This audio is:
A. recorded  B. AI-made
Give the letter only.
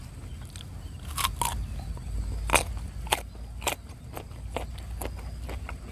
A